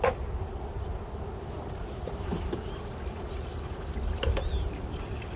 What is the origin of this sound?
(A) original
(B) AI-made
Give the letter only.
A